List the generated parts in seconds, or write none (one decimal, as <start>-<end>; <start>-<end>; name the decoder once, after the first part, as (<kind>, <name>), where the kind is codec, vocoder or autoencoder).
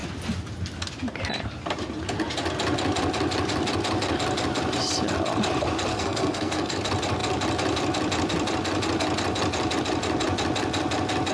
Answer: 5.9-6.8 (codec, SNAC)